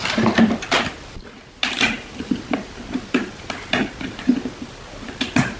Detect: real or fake real